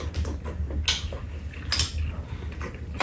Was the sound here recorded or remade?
recorded